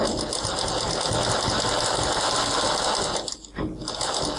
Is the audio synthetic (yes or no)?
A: no